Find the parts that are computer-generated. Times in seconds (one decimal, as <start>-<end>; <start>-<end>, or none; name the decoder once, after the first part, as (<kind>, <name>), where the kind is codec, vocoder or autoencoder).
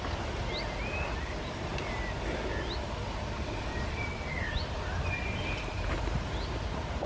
none